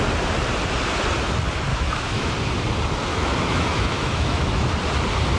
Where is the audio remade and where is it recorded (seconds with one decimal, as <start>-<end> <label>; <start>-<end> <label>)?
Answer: 0.0-1.7 recorded; 1.7-2.3 remade; 2.3-3.1 recorded; 3.1-4.7 remade; 4.7-5.4 recorded